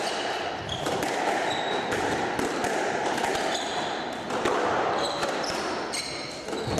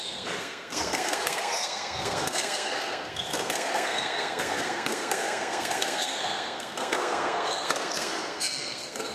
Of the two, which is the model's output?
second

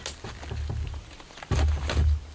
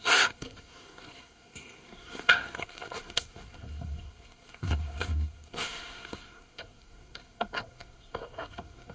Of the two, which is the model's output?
second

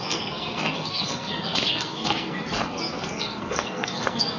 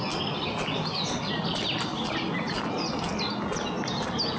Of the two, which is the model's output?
first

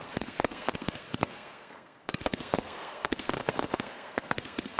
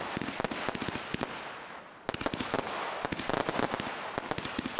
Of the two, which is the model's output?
first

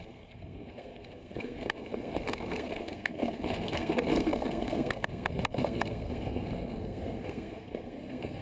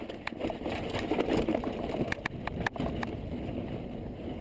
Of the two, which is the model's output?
first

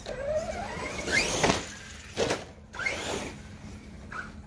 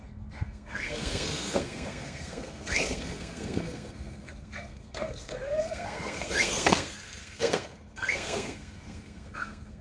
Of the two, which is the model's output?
second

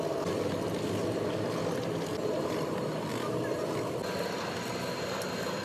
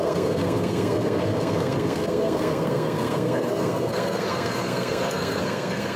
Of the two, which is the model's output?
second